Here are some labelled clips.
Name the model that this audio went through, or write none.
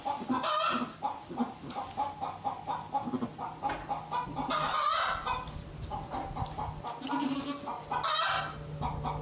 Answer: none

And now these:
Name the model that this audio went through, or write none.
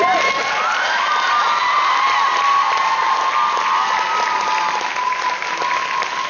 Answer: none